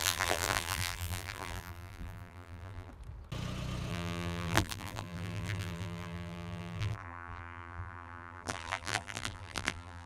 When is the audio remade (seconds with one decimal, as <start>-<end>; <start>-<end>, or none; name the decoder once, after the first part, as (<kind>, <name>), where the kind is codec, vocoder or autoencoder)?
0.0-2.9 (vocoder, BigVGAN v2); 3.9-10.1